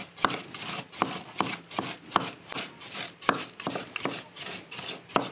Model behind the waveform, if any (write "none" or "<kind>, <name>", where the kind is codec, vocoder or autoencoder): none